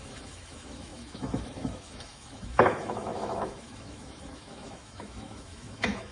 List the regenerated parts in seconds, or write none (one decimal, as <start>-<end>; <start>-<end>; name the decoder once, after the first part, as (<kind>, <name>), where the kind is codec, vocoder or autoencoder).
0.0-6.1 (autoencoder, DAC-VAE)